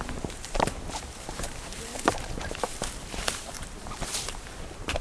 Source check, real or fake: fake